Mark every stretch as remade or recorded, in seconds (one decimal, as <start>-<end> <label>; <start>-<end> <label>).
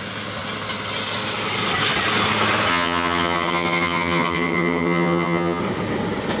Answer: 0.0-2.7 recorded; 2.7-5.6 remade; 5.6-6.4 recorded